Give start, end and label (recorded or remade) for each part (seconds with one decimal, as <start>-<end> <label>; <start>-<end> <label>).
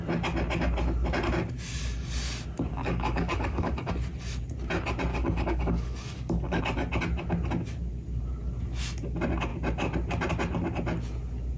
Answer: 0.0-2.7 recorded; 2.7-3.9 remade; 3.9-5.1 recorded; 5.1-6.6 remade; 6.6-11.6 recorded